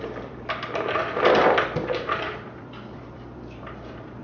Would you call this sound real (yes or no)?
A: no